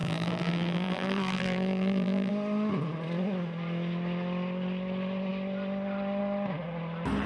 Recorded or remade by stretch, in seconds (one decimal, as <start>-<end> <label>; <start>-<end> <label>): 0.0-2.3 remade; 2.3-7.3 recorded